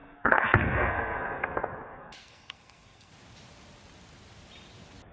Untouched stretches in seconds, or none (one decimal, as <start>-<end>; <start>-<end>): 3.1-5.1